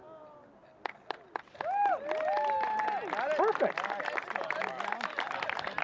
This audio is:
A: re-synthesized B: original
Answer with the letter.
B